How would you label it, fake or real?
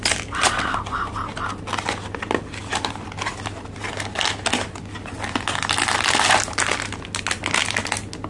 real